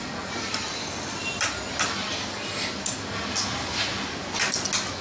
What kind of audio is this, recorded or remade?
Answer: recorded